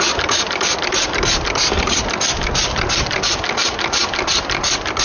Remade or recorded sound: recorded